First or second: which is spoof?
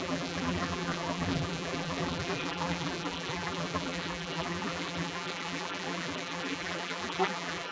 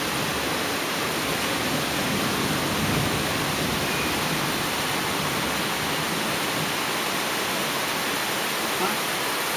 first